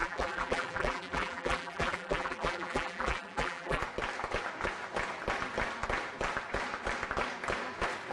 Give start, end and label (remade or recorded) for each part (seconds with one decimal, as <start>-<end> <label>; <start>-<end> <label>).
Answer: 0.0-3.8 remade; 3.8-8.1 recorded